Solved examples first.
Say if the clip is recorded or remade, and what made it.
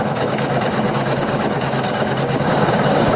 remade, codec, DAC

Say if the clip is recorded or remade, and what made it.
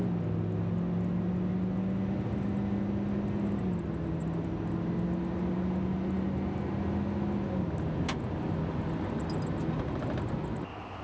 recorded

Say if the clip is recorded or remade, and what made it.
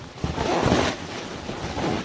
recorded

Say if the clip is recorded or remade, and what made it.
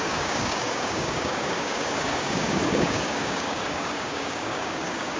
remade, codec, DAC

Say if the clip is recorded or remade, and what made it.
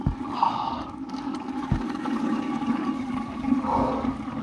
remade, codec, DAC